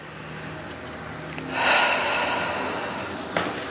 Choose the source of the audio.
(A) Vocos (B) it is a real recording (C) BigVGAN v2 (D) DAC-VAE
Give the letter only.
B